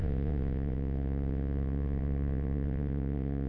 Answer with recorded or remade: remade